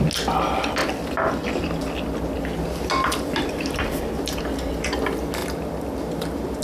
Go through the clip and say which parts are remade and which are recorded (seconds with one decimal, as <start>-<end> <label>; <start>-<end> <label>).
0.0-6.6 recorded